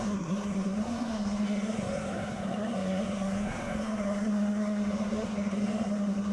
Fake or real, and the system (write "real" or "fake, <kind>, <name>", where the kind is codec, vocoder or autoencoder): fake, codec, SNAC